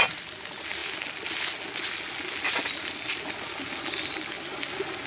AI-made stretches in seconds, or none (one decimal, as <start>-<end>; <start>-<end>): none